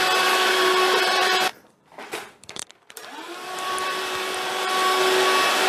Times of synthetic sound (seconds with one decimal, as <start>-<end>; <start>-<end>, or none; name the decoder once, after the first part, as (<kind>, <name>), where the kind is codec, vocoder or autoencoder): 1.5-4.1 (vocoder, BigVGAN v2)